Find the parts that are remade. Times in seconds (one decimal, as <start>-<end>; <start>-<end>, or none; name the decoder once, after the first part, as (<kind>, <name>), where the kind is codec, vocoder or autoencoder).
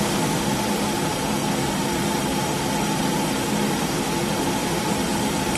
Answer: none